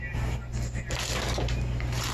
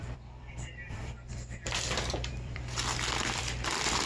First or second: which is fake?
second